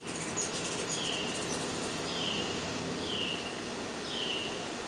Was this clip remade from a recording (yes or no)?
yes